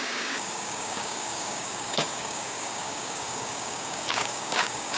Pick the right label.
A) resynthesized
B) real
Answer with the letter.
A